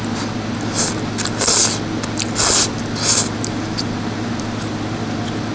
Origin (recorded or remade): recorded